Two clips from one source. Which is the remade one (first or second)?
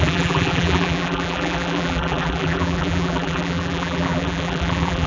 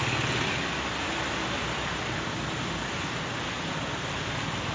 first